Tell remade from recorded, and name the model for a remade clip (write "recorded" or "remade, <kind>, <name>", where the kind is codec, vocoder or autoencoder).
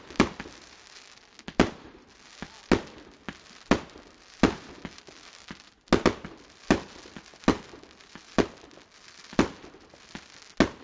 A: recorded